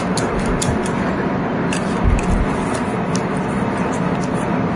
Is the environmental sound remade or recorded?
recorded